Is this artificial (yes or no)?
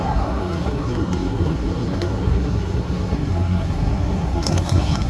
yes